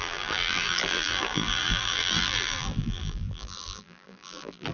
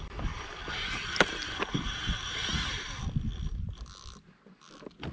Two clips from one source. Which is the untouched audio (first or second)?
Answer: second